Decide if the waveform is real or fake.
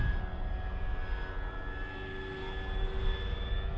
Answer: real